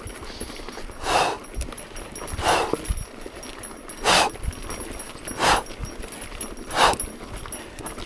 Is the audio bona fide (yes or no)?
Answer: yes